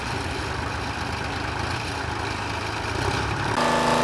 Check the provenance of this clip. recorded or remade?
recorded